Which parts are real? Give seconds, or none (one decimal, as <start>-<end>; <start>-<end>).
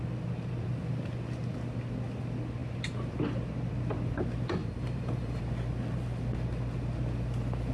0.0-4.6; 5.4-7.7